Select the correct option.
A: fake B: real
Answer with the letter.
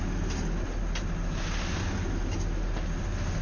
B